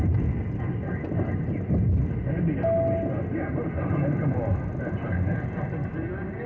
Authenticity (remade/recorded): recorded